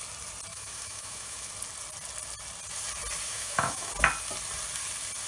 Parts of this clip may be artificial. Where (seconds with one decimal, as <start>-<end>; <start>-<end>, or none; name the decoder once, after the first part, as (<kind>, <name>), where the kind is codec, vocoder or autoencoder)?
0.5-1.5 (autoencoder, DAC-VAE); 3.3-3.9